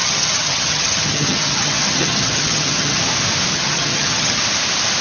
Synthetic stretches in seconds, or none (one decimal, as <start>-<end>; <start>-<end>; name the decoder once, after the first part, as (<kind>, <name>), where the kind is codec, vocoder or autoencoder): 0.0-3.0 (vocoder, HiFi-GAN); 3.5-4.4